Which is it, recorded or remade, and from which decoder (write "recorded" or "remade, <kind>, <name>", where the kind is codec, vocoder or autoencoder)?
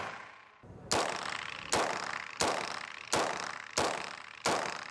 recorded